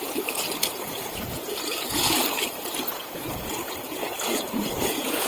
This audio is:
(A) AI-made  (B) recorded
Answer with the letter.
A